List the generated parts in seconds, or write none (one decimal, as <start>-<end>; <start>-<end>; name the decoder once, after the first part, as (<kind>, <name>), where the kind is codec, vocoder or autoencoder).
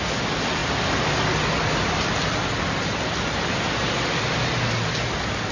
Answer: none